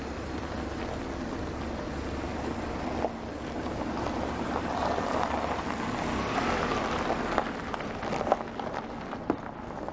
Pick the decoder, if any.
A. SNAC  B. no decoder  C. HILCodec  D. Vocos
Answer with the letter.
B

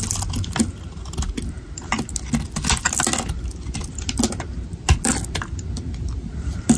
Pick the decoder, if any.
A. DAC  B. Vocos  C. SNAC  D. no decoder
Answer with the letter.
D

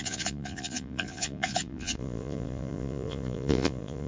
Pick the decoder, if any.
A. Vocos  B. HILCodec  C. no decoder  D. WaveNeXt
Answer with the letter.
A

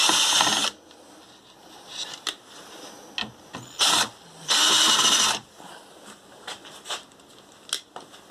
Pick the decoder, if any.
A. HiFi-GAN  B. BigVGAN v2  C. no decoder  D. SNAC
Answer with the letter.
C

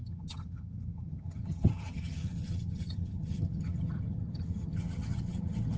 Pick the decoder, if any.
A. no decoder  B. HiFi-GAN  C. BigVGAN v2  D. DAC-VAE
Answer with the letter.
B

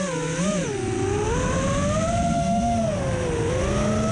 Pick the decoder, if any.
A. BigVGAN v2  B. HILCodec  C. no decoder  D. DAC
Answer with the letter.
C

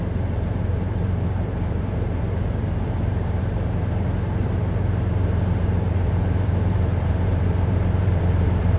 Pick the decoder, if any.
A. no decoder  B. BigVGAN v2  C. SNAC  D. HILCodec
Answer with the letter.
B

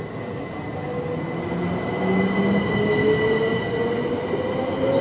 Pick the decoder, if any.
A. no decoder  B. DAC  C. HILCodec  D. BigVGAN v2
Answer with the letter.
A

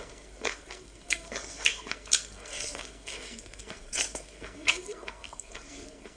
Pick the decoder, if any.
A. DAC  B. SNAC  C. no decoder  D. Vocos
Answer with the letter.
B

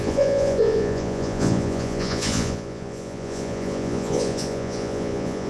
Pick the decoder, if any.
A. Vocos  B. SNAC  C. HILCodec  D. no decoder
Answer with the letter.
A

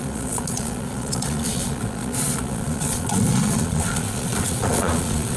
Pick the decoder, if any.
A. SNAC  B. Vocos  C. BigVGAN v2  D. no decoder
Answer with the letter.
B